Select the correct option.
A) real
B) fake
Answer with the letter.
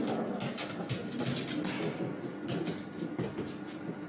A